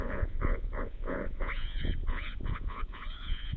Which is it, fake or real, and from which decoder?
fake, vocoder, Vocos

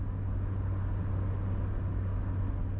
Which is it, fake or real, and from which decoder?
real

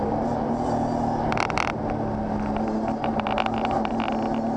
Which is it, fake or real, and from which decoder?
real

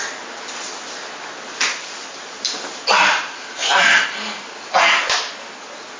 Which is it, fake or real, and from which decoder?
real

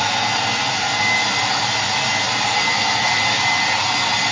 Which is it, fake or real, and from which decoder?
real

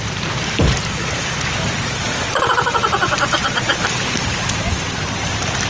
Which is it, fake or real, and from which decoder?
fake, vocoder, BigVGAN v2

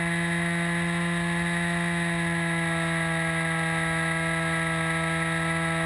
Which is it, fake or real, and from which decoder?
real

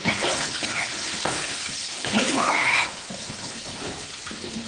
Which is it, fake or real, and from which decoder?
fake, codec, HILCodec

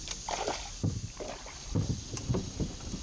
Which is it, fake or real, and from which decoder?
real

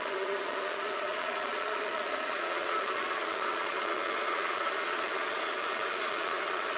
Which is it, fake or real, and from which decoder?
fake, vocoder, Vocos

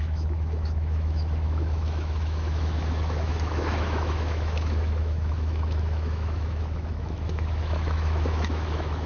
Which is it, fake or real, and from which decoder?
fake, autoencoder, DAC-VAE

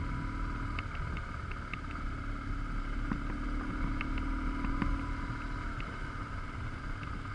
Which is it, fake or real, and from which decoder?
real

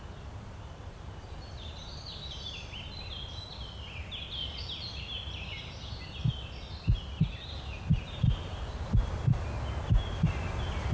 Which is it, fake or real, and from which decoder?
real